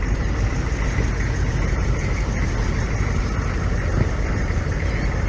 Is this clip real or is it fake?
fake